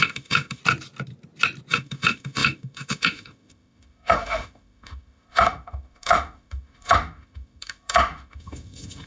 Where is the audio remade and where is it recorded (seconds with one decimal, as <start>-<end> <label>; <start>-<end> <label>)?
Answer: 0.0-0.6 remade; 0.6-1.7 recorded; 1.7-9.1 remade

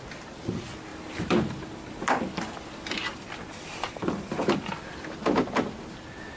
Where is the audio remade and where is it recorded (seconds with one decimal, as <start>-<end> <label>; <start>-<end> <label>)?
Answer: 0.0-0.9 recorded; 0.9-4.7 remade; 4.7-6.4 recorded